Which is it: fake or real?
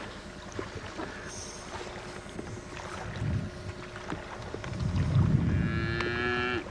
real